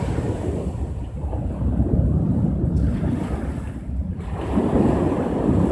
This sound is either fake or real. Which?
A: real